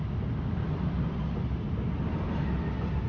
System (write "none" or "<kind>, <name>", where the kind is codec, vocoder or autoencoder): none